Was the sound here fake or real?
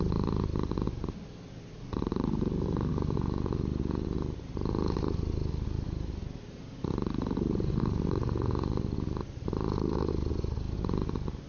real